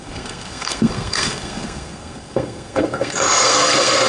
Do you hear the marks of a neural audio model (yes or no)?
yes